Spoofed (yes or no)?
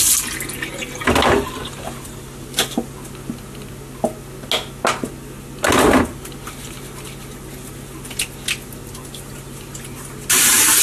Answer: no